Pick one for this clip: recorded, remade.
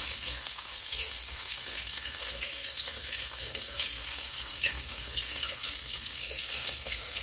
remade